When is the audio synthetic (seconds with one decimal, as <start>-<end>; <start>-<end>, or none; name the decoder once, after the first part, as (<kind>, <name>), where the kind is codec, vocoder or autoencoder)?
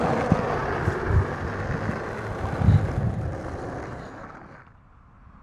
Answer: none